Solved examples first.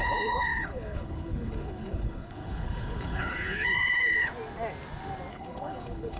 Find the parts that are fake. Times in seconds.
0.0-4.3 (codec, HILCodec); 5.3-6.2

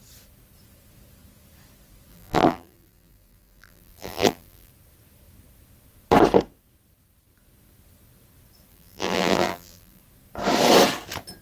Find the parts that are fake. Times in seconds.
2.1-4.7 (vocoder, BigVGAN v2); 8.7-10.0

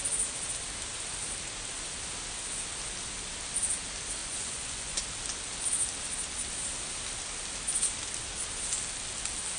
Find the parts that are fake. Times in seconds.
4.2-5.0 (vocoder, Vocos)

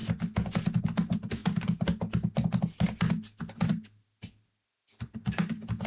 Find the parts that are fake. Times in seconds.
none

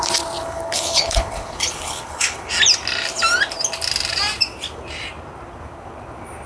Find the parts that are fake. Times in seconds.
0.4-2.5 (codec, HILCodec)

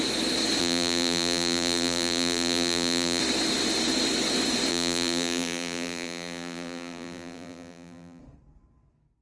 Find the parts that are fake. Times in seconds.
0.6-3.2 (vocoder, BigVGAN v2); 4.7-8.2

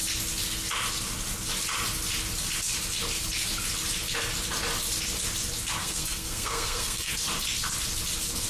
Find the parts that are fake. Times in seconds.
5.8-7.1 (codec, SNAC)